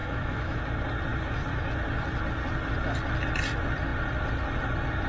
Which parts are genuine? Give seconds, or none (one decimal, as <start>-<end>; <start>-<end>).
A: 0.6-5.1